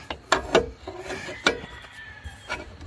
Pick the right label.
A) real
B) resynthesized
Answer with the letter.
A